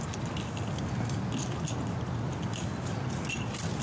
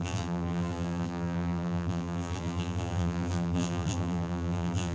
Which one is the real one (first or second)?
first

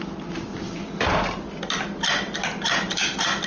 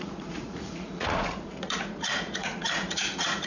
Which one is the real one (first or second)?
first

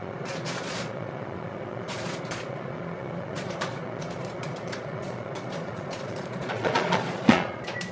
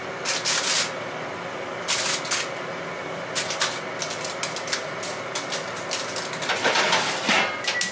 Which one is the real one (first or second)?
second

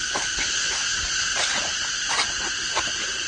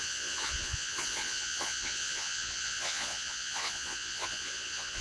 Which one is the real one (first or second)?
first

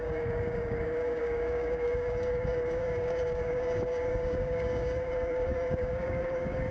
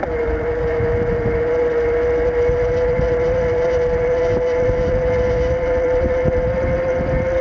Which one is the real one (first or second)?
second